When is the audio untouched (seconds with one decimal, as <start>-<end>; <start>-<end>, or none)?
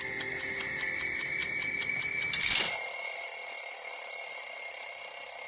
0.0-5.5